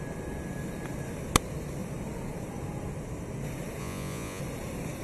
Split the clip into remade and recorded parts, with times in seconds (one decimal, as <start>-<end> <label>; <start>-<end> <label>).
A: 0.0-3.8 recorded; 3.8-4.4 remade; 4.4-5.0 recorded